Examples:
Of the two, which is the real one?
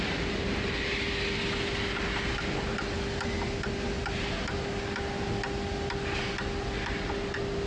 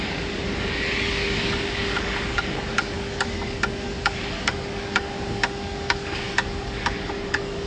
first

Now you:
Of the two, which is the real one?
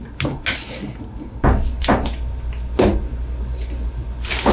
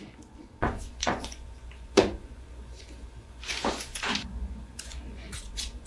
first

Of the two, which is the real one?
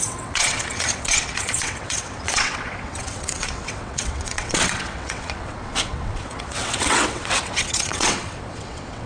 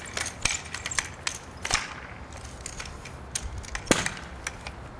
second